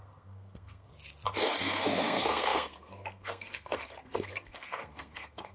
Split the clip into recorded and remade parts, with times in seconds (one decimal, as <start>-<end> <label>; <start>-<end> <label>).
0.0-0.9 remade; 0.9-1.6 recorded; 1.6-5.5 remade